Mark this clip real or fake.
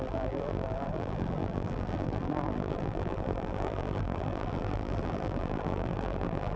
fake